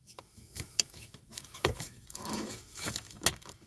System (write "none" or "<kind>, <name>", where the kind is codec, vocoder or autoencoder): autoencoder, DAC-VAE